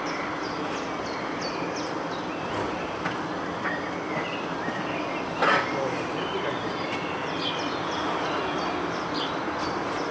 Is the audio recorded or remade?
recorded